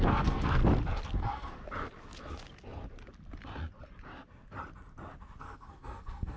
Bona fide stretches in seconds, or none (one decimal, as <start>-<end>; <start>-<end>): 0.6-1.2; 1.6-5.4